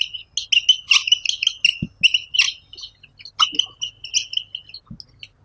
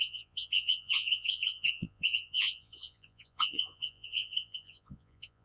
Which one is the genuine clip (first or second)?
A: first